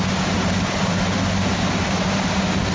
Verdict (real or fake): real